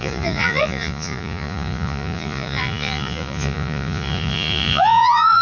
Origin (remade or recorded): remade